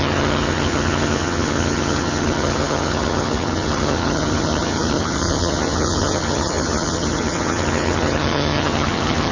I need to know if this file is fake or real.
fake